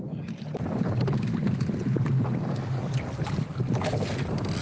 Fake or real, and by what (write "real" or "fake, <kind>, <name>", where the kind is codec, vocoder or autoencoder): real